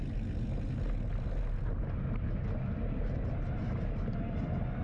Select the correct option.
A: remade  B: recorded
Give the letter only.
B